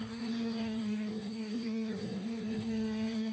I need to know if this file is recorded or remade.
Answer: remade